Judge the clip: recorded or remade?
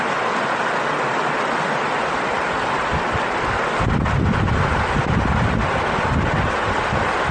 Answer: recorded